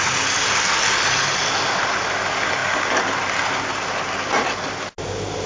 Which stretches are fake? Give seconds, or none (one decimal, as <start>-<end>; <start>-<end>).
none